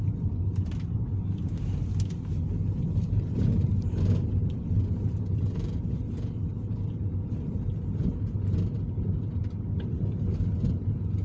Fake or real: real